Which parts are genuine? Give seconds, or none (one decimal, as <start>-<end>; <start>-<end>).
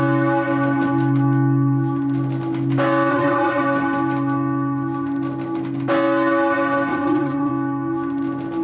0.0-3.1; 3.6-6.9; 7.5-8.6